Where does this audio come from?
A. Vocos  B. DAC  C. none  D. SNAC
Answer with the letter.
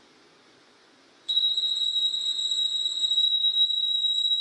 A